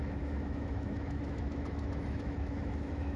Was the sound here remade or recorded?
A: remade